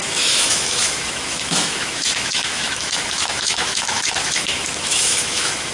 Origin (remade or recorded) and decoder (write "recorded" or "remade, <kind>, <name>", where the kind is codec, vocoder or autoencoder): remade, autoencoder, DAC-VAE